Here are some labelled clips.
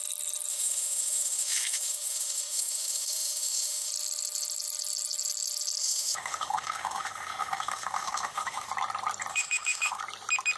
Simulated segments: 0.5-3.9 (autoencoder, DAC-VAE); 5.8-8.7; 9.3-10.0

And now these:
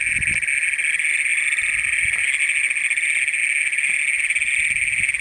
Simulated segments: none

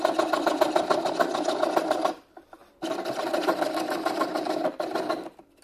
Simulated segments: 2.6-5.1 (vocoder, BigVGAN v2)

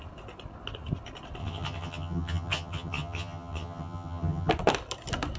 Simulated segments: 1.4-4.5 (vocoder, HiFi-GAN)

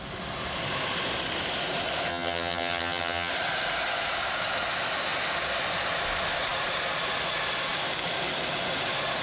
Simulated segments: 2.1-3.3 (vocoder, HiFi-GAN)

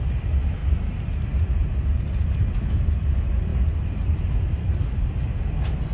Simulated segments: none

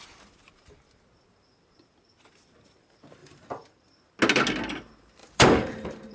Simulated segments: 3.2-4.1 (vocoder, BigVGAN v2); 5.2-6.1

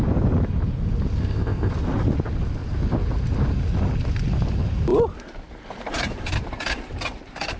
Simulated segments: 1.2-1.7 (codec, ZipCodec)